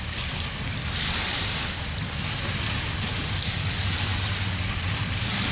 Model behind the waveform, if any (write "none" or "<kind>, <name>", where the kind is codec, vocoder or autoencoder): none